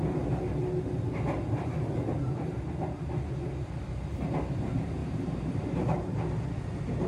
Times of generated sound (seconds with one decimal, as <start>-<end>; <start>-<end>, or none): 5.0-6.3